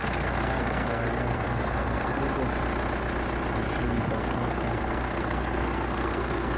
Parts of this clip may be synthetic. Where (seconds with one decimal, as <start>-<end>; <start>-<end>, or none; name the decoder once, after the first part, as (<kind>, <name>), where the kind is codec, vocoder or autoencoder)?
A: 0.0-2.2 (codec, SNAC); 3.8-6.6